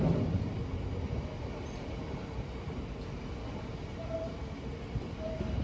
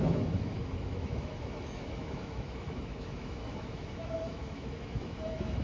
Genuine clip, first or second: first